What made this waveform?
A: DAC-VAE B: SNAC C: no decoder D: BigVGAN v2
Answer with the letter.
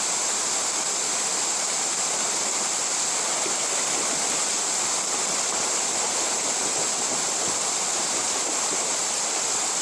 C